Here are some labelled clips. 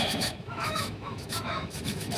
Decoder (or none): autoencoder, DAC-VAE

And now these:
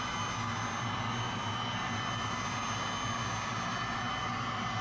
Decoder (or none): none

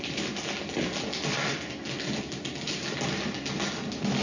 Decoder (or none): none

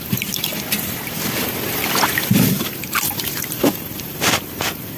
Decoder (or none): none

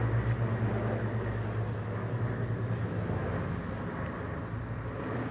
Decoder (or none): none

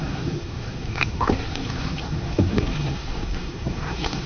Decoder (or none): codec, SNAC